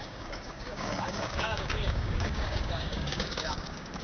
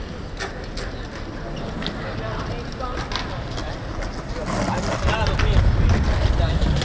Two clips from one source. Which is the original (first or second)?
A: second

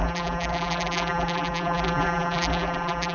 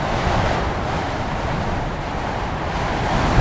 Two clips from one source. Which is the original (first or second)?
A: second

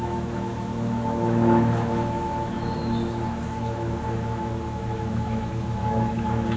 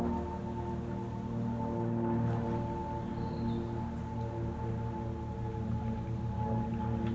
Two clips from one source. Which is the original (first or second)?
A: second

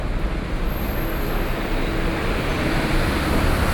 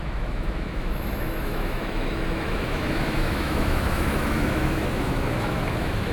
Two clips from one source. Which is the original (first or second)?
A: first